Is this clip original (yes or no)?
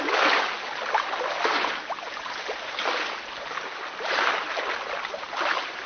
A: yes